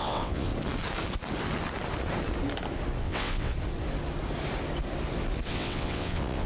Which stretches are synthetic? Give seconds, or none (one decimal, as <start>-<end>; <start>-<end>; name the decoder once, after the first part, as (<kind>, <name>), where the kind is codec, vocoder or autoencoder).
0.0-0.5 (vocoder, WaveNeXt); 3.0-3.5; 5.5-6.5